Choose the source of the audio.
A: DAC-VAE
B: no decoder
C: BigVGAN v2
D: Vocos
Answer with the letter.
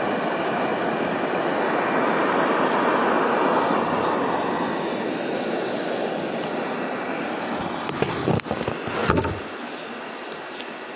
B